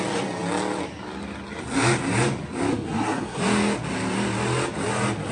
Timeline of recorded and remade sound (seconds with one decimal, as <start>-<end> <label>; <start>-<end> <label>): 0.0-2.7 recorded; 2.7-3.4 remade; 3.4-5.3 recorded